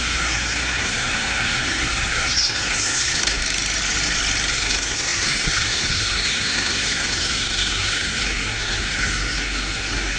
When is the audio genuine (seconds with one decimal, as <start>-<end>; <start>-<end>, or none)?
3.4-4.5

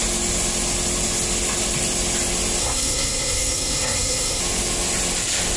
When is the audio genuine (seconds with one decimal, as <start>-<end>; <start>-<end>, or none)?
0.0-2.6; 4.4-5.6

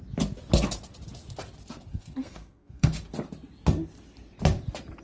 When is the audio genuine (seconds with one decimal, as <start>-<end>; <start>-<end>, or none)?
0.0-1.9; 2.9-5.0

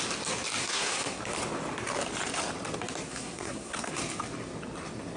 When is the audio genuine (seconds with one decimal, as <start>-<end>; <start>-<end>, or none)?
0.0-0.6; 1.2-3.1; 4.0-5.2

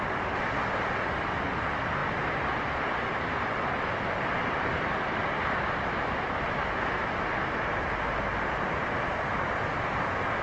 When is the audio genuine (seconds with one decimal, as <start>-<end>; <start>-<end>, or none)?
0.0-10.4